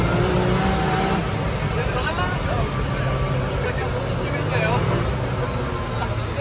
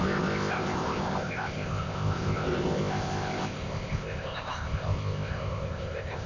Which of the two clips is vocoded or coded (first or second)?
second